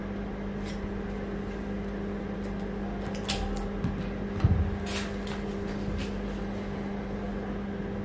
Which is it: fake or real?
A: real